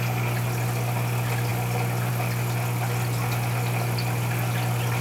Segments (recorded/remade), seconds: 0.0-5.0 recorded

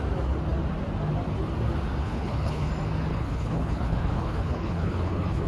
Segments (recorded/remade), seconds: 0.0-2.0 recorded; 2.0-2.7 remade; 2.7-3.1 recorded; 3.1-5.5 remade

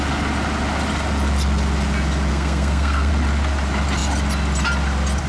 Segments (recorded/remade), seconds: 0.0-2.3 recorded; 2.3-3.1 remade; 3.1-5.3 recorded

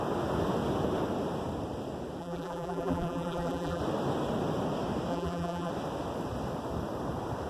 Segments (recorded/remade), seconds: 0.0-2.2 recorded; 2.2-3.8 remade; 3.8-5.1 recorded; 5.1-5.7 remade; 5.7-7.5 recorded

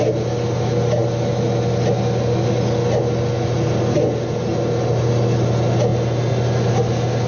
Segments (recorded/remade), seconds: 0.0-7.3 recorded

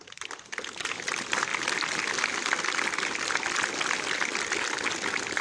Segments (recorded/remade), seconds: 0.0-5.4 recorded

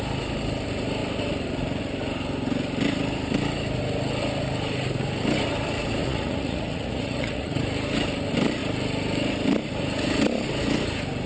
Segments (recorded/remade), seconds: 0.0-6.0 recorded; 6.0-7.6 remade; 7.6-11.3 recorded